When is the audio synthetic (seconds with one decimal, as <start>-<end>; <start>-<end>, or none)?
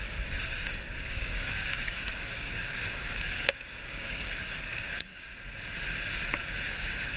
0.0-5.3; 6.7-7.2